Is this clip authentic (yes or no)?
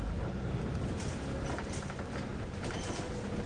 yes